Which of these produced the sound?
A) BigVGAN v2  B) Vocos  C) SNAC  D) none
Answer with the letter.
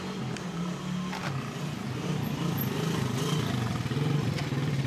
D